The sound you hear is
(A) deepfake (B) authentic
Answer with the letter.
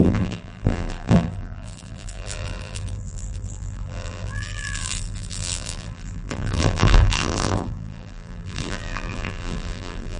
A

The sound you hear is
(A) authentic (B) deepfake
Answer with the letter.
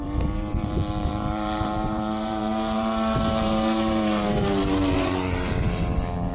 B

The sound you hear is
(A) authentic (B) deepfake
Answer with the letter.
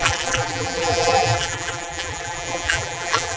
B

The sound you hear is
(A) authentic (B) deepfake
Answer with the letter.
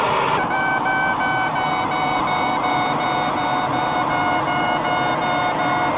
A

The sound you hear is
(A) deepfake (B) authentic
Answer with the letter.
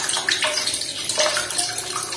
A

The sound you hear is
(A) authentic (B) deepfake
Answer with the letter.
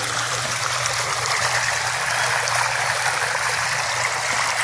B